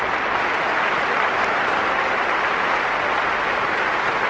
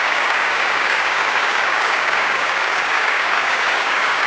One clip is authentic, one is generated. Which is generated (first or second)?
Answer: second